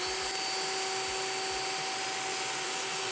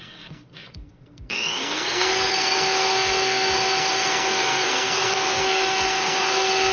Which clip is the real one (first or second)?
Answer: first